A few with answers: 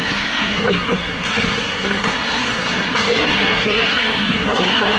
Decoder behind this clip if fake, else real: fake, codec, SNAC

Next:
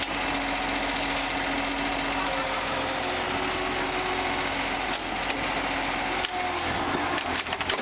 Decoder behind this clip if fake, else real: real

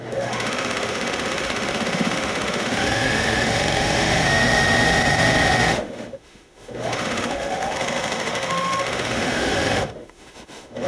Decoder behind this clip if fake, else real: fake, autoencoder, DAC-VAE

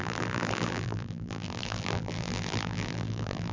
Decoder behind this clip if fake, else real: fake, vocoder, BigVGAN v2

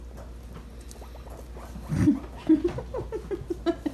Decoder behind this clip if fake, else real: real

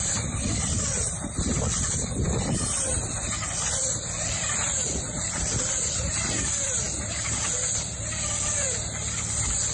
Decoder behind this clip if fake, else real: fake, vocoder, BigVGAN v2